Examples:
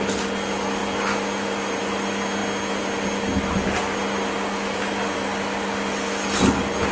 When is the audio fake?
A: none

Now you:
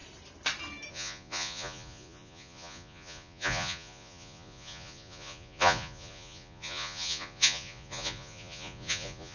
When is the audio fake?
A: 0.9-9.3 (vocoder, Vocos)

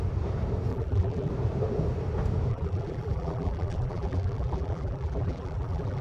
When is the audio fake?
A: 0.7-1.3 (vocoder, BigVGAN v2); 2.5-6.0

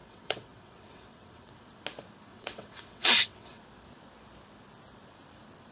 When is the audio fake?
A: 0.0-1.5 (vocoder, WaveNeXt); 2.3-3.6

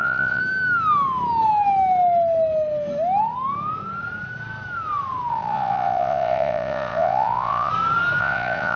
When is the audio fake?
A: 0.0-0.4 (vocoder, Vocos); 5.3-7.7; 8.2-8.8

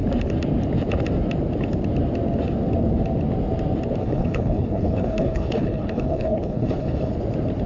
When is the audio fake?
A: 4.0-7.1 (codec, HILCodec)